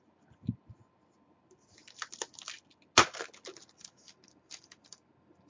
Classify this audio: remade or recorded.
recorded